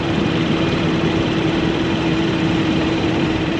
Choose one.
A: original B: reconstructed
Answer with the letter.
B